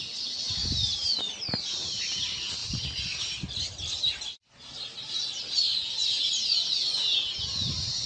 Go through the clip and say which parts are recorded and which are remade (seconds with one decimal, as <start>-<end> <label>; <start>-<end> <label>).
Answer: 0.0-8.1 recorded